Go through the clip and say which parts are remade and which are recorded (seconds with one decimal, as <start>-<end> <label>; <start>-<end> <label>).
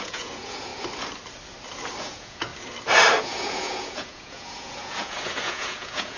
0.0-0.7 remade; 0.7-2.0 recorded; 2.0-2.5 remade; 2.5-3.2 recorded; 3.2-6.2 remade